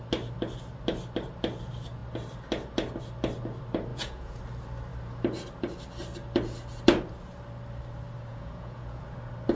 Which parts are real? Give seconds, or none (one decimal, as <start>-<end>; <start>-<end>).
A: 0.0-3.9; 4.4-8.3; 9.0-9.6